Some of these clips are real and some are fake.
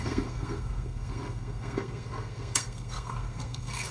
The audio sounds fake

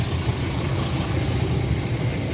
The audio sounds real